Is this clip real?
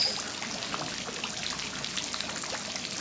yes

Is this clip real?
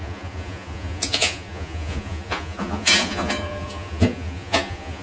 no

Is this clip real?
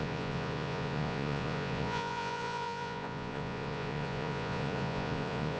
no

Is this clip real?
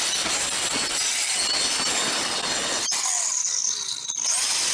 yes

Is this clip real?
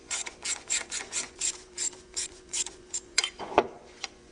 no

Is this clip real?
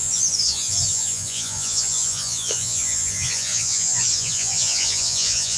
no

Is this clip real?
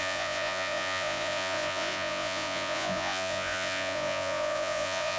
no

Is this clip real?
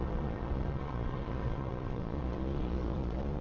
no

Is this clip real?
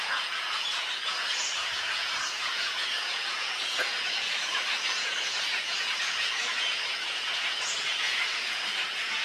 no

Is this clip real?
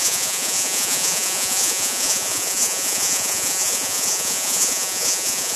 no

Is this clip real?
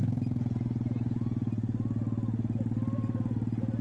yes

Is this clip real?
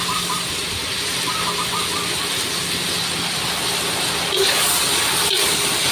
yes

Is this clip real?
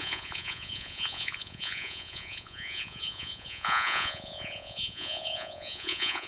no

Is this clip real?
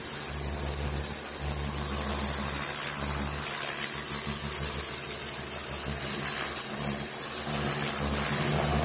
yes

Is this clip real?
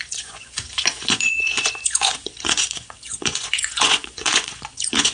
no